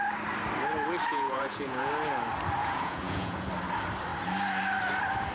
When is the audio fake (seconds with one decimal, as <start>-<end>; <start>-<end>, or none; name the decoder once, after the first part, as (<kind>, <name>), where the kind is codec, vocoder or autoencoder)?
1.1-1.9 (vocoder, Vocos); 2.6-3.5